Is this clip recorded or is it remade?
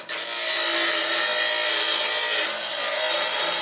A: recorded